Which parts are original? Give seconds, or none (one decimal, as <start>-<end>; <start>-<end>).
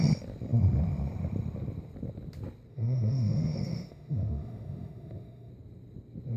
0.0-2.7; 5.5-6.4